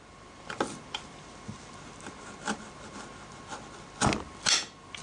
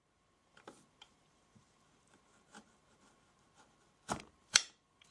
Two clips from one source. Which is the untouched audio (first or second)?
first